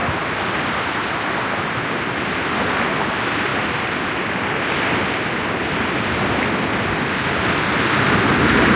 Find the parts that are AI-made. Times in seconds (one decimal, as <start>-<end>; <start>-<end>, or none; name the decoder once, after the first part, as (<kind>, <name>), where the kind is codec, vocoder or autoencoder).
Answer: none